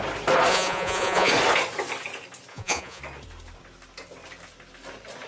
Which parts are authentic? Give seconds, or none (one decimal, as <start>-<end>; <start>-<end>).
0.0-0.5; 1.3-2.5; 3.0-5.3